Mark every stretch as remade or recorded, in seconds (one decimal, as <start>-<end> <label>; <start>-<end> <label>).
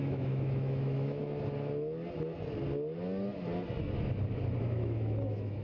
0.0-1.2 remade; 1.2-4.6 recorded; 4.6-5.6 remade